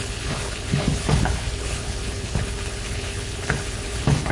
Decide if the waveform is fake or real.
fake